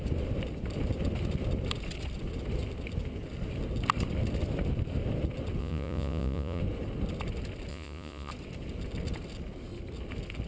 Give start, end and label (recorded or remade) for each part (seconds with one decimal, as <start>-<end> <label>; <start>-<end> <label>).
0.0-5.6 recorded; 5.6-6.6 remade; 6.6-7.7 recorded; 7.7-8.3 remade; 8.3-10.5 recorded